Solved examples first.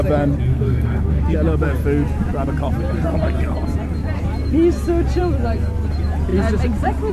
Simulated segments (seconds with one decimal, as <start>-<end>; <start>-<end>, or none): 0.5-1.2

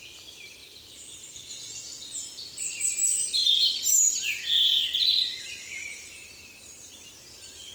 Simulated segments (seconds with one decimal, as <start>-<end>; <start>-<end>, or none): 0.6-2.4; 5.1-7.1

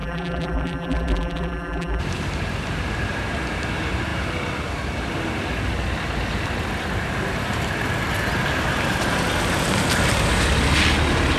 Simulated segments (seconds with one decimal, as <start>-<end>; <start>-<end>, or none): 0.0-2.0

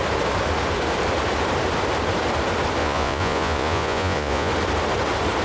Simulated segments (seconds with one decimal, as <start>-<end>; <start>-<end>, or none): 2.8-4.5

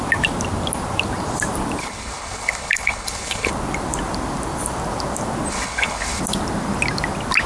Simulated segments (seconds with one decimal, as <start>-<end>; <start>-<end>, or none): 1.8-3.5; 5.5-6.2

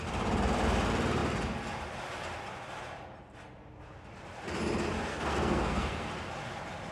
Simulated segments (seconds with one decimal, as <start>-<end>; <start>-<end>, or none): 5.1-6.1

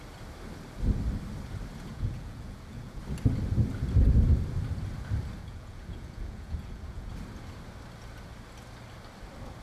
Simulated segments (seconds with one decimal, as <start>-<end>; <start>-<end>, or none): 1.9-3.0; 5.4-7.1